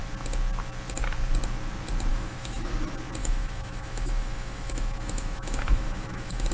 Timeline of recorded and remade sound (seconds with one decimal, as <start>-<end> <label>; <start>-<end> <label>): 0.0-2.1 recorded; 2.1-2.7 remade; 2.7-3.2 recorded; 3.2-6.5 remade